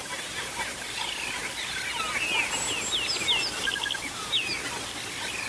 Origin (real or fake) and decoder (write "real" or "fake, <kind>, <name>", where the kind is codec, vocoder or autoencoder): real